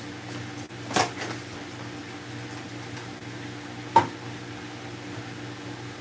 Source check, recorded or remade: recorded